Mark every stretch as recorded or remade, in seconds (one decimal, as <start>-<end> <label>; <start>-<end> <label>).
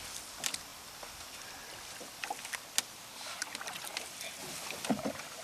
0.0-5.4 recorded